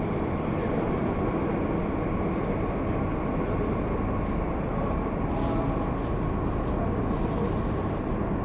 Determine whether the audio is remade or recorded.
recorded